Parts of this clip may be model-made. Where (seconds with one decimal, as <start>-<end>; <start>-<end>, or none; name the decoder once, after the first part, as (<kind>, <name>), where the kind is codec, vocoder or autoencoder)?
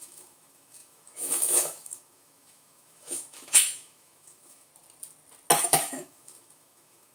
0.0-4.7 (autoencoder, DAC-VAE); 5.6-7.1